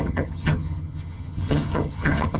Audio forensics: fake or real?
fake